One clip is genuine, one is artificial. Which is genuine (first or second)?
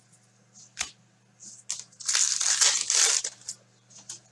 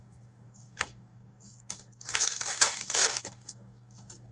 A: first